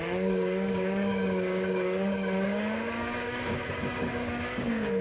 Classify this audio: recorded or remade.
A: remade